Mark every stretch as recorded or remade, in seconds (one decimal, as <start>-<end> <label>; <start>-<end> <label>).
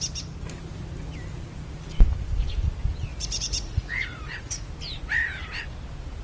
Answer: 0.0-3.1 recorded; 3.1-4.7 remade; 4.7-6.2 recorded